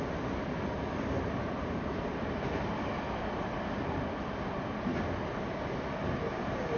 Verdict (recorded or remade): recorded